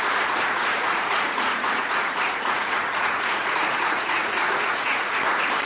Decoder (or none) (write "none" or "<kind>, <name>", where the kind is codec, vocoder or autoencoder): vocoder, Vocos